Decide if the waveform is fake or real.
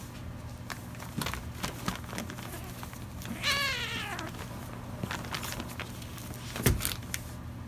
real